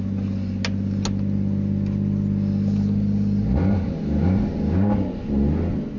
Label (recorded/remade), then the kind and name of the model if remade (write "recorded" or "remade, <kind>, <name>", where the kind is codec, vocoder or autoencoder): recorded